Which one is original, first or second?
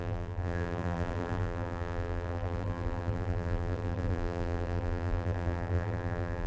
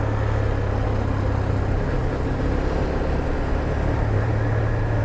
second